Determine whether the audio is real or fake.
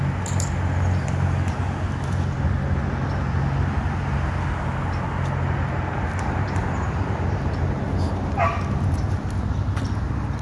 real